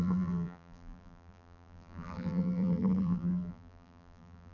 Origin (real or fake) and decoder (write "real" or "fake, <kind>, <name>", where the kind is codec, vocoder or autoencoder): fake, vocoder, BigVGAN v2